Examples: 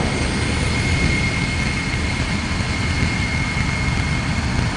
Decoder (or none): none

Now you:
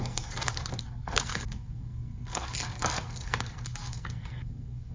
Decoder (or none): codec, SNAC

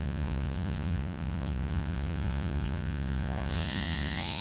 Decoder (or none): vocoder, Vocos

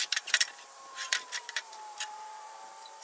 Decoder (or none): vocoder, BigVGAN v2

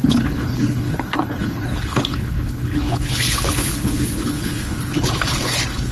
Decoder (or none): codec, HILCodec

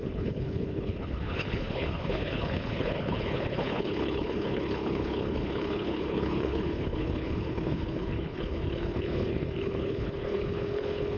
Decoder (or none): codec, HILCodec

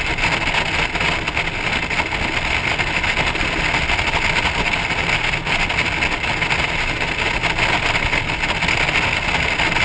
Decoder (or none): none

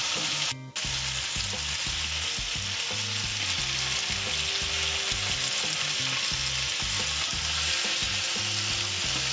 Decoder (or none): none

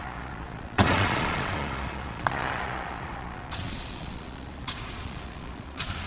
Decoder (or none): vocoder, Vocos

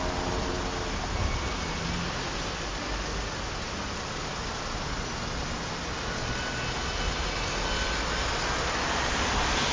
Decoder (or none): none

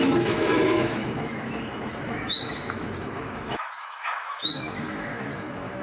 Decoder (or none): autoencoder, DAC-VAE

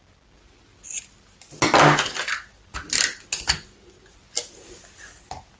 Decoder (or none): none